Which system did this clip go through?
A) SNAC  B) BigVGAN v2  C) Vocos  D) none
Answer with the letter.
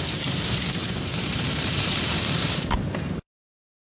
B